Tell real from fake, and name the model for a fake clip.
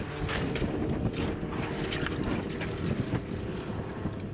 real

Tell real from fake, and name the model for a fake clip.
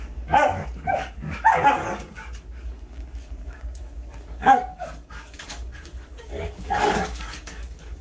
fake, codec, DAC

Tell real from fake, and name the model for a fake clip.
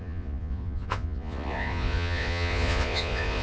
fake, vocoder, Vocos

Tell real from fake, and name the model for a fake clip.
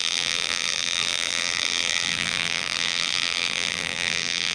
fake, vocoder, BigVGAN v2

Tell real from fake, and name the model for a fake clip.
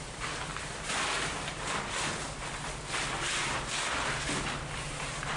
real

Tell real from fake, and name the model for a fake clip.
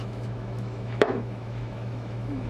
fake, autoencoder, DAC-VAE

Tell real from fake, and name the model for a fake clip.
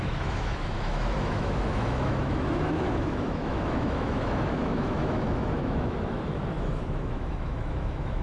fake, autoencoder, DAC-VAE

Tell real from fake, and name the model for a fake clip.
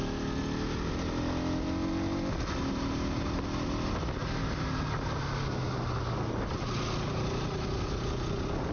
real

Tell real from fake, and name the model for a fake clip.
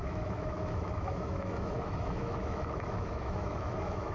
fake, autoencoder, DAC-VAE